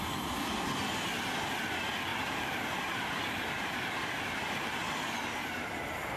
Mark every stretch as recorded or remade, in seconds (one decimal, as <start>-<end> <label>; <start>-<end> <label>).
0.0-2.1 recorded; 2.1-3.2 remade; 3.2-6.2 recorded